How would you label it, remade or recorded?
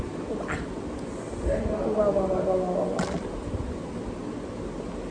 recorded